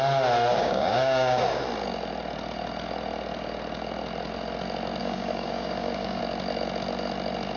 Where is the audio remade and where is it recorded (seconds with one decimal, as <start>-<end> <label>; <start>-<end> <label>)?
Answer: 0.0-0.6 recorded; 0.6-1.4 remade; 1.4-5.0 recorded; 5.0-6.2 remade; 6.2-7.6 recorded